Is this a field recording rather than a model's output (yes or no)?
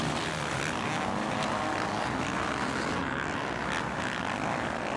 yes